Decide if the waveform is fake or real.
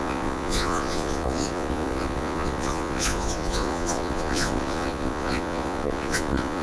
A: fake